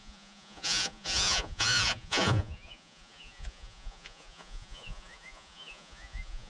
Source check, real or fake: fake